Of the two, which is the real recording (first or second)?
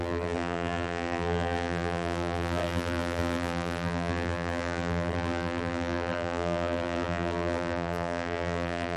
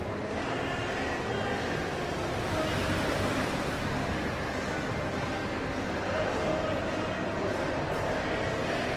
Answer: second